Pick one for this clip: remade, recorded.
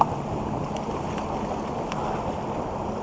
recorded